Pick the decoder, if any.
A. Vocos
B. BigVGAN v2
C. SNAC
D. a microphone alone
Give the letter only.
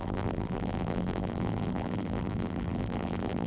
B